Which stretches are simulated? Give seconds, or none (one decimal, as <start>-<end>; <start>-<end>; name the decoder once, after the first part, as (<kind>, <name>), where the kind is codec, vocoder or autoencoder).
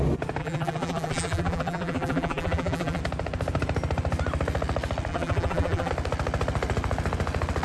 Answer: 0.4-3.0 (vocoder, BigVGAN v2); 5.1-5.9